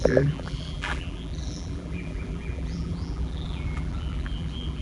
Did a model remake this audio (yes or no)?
yes